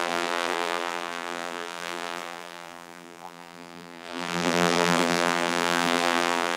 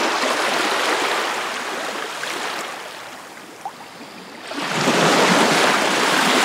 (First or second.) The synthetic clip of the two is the first